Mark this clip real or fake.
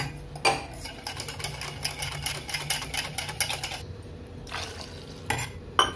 real